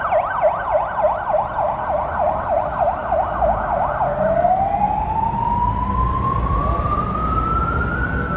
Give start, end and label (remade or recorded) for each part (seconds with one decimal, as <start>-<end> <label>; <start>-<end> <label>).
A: 0.0-8.4 recorded